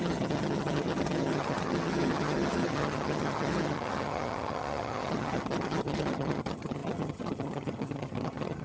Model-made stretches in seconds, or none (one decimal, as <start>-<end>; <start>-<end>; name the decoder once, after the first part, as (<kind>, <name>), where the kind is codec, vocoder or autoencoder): 0.0-8.6 (vocoder, HiFi-GAN)